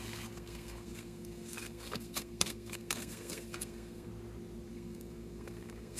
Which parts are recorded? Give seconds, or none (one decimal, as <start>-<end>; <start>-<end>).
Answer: 4.1-4.7